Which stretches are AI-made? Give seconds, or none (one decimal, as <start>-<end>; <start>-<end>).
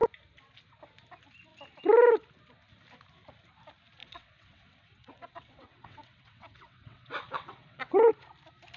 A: 4.0-8.1